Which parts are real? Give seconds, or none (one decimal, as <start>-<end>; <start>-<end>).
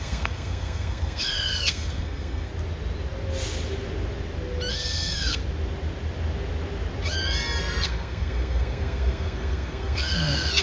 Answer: 2.5-4.7; 5.4-7.6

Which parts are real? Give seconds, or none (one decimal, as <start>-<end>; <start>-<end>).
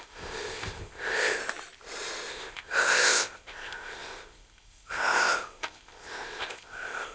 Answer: 1.4-2.3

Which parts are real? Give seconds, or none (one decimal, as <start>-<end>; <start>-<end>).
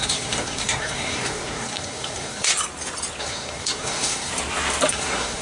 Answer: 2.5-3.2; 4.3-4.9